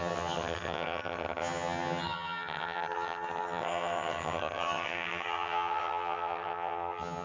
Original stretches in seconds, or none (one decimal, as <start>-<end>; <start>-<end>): none